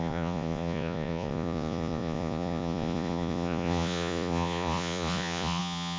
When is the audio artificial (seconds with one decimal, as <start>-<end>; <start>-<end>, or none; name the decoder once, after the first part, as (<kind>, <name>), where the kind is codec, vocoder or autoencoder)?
0.0-6.0 (vocoder, Vocos)